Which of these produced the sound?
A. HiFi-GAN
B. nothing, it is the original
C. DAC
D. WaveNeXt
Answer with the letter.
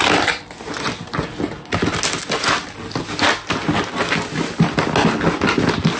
B